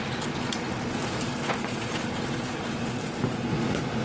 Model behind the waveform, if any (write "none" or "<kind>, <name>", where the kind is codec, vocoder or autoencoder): none